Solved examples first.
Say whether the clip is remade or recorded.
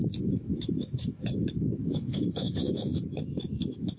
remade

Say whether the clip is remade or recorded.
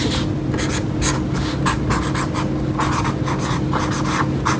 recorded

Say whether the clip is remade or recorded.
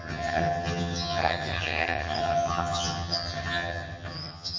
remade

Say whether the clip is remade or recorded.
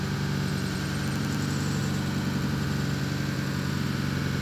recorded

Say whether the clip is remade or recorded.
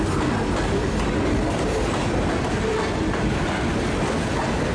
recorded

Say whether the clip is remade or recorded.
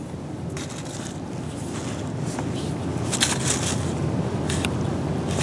recorded